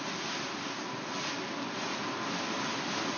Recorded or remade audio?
recorded